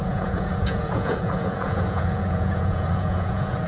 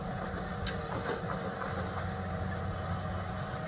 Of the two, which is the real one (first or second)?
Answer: second